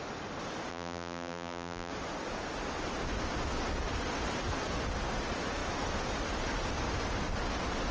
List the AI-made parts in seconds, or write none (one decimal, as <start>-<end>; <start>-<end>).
0.7-1.9